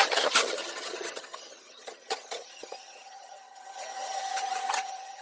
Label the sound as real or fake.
fake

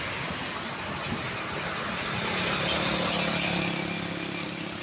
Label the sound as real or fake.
real